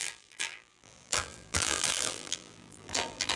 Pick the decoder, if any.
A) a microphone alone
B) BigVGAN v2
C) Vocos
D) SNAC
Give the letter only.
B